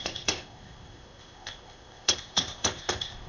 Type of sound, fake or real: fake